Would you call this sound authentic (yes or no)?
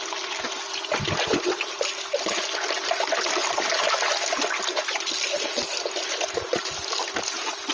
yes